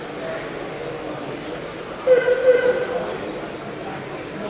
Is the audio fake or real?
real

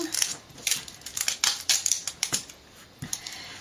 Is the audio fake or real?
real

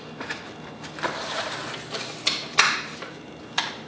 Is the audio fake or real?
real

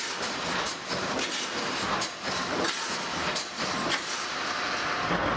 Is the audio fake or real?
real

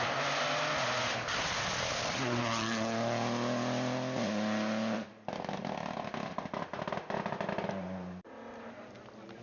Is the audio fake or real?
real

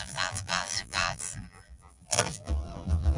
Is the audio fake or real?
fake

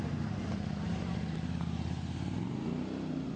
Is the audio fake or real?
real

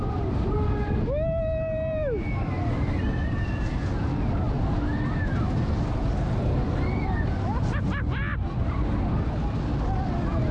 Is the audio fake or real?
real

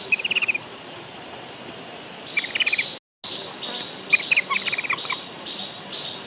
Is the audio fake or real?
real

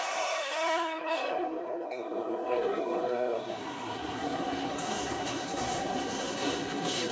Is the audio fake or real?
fake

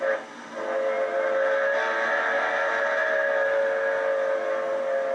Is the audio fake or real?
real